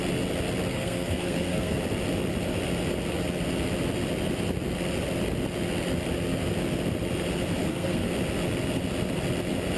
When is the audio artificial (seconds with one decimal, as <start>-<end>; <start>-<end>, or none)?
0.7-1.8; 7.6-8.1